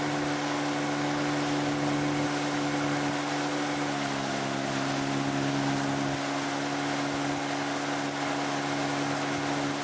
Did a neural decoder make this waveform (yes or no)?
no